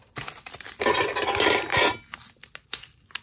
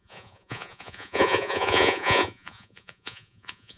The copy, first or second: second